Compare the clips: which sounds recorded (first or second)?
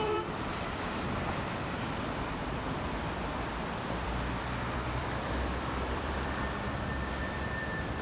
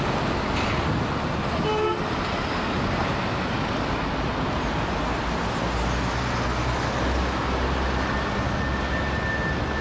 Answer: second